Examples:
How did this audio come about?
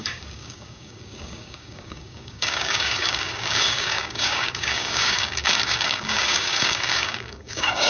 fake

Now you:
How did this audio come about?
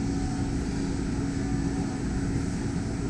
real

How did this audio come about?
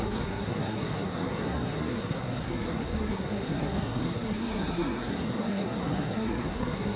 fake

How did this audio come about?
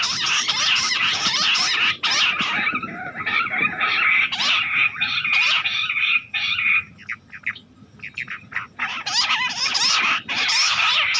real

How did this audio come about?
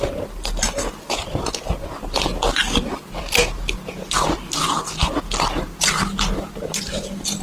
real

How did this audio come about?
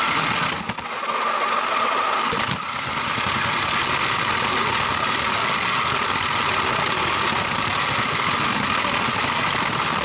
real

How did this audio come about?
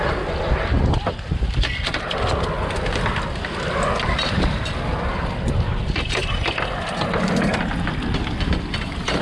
real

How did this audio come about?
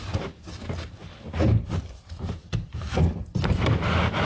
real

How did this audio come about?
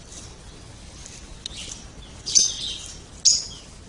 real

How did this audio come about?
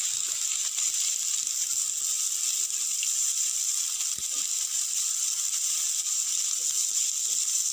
real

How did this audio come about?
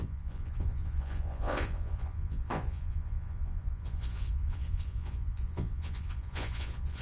fake